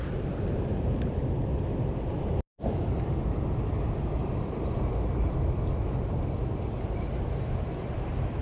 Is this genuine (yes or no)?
yes